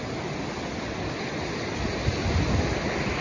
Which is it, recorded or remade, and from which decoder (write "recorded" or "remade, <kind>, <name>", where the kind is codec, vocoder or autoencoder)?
recorded